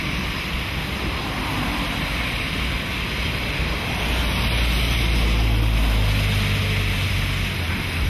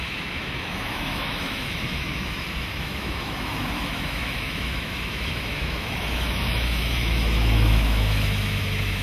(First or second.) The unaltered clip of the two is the first